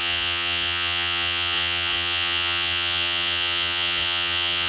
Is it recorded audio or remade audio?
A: remade